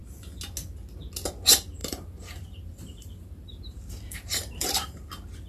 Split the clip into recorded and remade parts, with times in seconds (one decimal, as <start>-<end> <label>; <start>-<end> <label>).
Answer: 0.0-1.8 recorded; 1.8-5.1 remade; 5.1-5.5 recorded